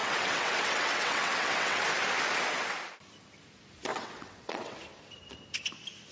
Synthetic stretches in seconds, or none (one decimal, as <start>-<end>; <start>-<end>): 0.0-1.8; 3.9-4.8